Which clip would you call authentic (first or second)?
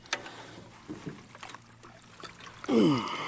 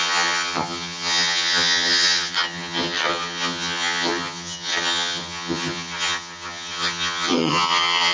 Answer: first